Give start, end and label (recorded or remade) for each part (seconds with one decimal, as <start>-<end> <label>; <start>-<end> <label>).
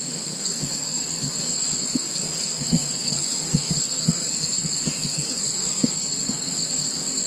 0.0-7.3 remade